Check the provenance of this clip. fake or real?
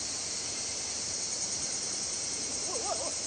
real